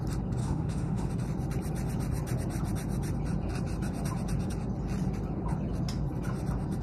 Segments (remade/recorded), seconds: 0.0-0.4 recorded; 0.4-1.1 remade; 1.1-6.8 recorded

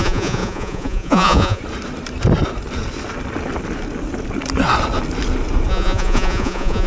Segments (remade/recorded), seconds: 0.0-1.6 remade; 1.6-5.7 recorded; 5.7-6.9 remade

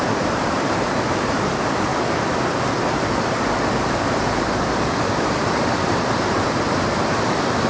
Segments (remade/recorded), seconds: 0.0-1.9 remade; 1.9-2.9 recorded; 2.9-7.7 remade

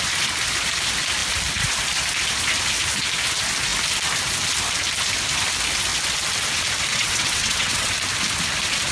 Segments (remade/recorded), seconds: 0.0-6.9 recorded; 6.9-7.9 remade; 7.9-8.9 recorded

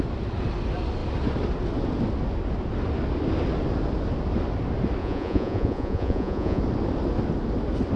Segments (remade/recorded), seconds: 0.0-5.0 recorded; 5.0-6.6 remade; 6.6-8.0 recorded